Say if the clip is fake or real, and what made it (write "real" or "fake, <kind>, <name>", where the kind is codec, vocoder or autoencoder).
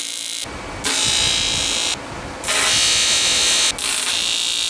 real